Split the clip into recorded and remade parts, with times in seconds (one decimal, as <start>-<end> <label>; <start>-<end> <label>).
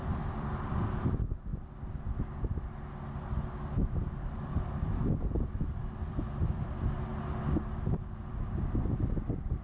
0.0-1.5 remade; 1.5-4.3 recorded; 4.3-7.1 remade; 7.1-8.3 recorded; 8.3-9.6 remade